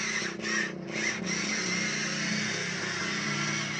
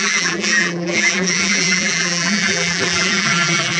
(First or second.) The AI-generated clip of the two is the second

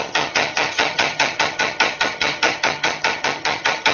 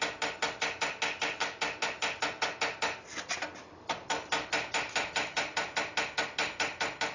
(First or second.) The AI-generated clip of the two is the first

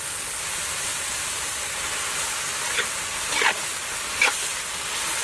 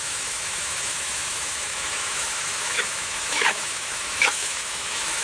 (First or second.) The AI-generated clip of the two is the second